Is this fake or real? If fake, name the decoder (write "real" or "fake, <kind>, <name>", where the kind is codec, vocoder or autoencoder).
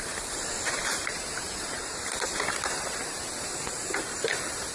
real